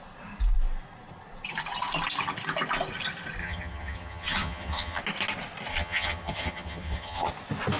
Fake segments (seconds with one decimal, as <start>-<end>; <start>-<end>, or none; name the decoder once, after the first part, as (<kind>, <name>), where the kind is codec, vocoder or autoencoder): 3.4-5.0 (vocoder, HiFi-GAN); 5.7-7.3